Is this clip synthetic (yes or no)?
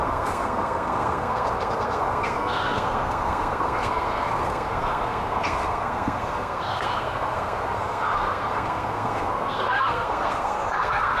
yes